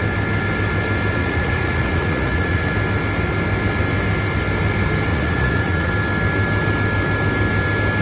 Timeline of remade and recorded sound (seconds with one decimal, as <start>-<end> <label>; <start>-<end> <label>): 0.0-1.2 recorded; 1.2-2.7 remade; 2.7-5.1 recorded; 5.1-5.9 remade; 5.9-8.0 recorded